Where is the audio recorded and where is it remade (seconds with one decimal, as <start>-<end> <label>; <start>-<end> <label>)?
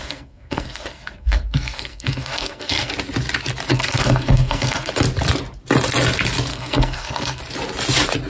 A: 0.0-2.9 remade; 2.9-3.7 recorded; 3.7-4.9 remade; 4.9-6.5 recorded; 6.5-7.4 remade; 7.4-8.3 recorded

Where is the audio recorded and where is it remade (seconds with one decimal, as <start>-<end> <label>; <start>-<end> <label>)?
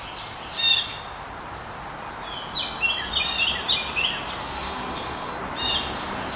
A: 0.0-4.4 recorded; 4.4-5.4 remade; 5.4-6.4 recorded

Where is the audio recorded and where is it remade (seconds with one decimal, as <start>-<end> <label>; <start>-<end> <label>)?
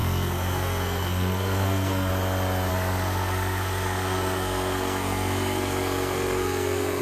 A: 0.0-2.1 remade; 2.1-2.7 recorded; 2.7-7.0 remade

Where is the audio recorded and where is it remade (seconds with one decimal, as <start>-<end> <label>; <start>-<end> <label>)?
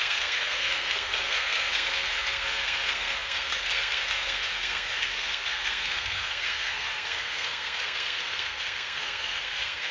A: 0.0-9.9 remade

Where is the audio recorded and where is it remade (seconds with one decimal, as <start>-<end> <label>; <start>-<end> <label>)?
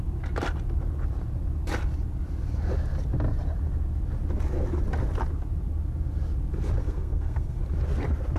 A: 0.0-6.8 recorded; 6.8-7.6 remade; 7.6-8.4 recorded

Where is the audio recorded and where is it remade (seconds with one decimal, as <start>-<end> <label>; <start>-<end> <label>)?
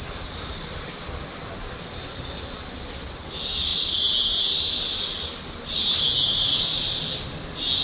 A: 0.0-7.8 recorded